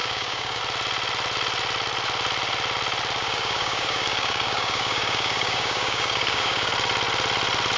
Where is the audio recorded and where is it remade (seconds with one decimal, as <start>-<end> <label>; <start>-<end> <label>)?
0.0-0.6 remade; 0.6-3.2 recorded; 3.2-6.7 remade; 6.7-7.8 recorded